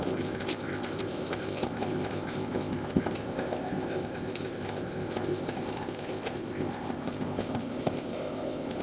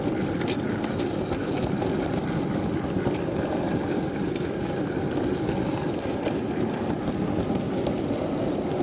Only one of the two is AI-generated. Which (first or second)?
first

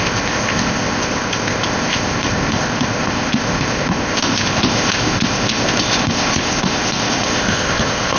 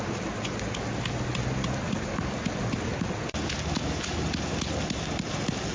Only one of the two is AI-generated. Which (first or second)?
first